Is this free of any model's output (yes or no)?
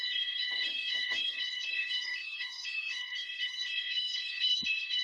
no